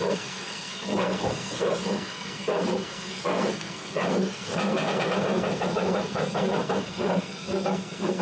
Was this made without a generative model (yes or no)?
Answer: no